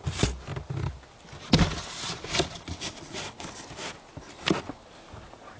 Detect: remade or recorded recorded